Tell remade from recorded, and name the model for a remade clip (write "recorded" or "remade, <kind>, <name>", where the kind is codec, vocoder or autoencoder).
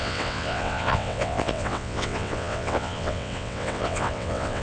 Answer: remade, vocoder, WaveNeXt